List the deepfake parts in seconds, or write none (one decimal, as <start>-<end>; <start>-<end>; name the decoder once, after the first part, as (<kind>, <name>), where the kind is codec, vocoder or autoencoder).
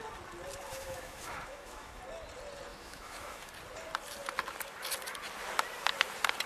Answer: 0.7-2.0 (autoencoder, DAC-VAE); 2.7-3.5